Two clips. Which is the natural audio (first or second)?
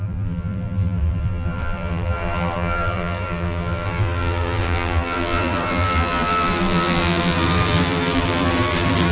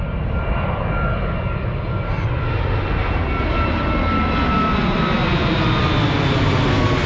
second